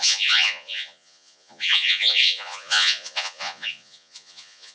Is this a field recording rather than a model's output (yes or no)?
no